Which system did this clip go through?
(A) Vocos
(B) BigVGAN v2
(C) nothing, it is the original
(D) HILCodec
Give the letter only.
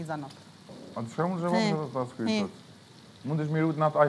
C